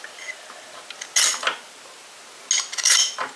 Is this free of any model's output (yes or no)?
yes